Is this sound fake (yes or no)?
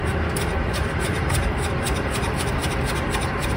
yes